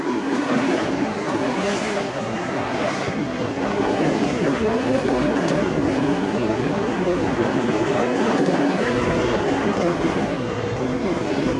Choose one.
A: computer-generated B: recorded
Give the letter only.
A